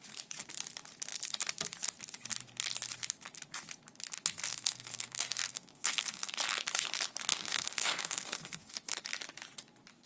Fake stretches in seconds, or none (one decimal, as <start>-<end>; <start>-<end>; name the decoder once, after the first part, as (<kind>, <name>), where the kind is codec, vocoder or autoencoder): 4.5-6.4 (codec, SNAC); 7.3-8.7